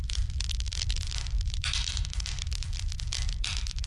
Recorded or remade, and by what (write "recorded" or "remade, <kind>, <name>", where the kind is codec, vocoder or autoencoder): remade, vocoder, BigVGAN v2